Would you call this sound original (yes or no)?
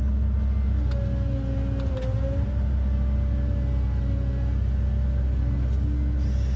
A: yes